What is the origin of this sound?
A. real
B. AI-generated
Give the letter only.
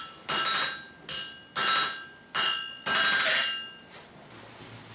A